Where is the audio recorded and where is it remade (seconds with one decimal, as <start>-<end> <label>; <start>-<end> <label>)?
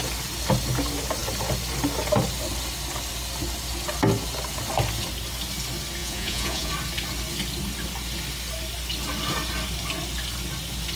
0.0-6.0 recorded; 6.0-6.7 remade; 6.7-11.0 recorded